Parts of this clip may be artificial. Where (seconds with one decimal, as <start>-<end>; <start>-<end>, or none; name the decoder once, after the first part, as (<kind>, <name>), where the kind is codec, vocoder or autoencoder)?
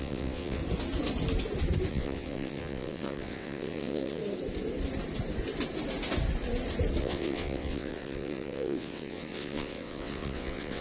0.0-0.6 (vocoder, WaveNeXt); 1.9-4.2; 7.0-10.8